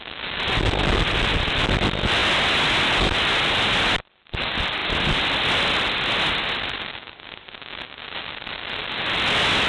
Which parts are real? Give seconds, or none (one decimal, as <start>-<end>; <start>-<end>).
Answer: 0.0-9.7